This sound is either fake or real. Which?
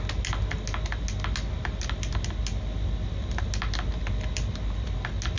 real